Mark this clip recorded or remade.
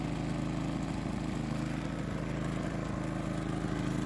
recorded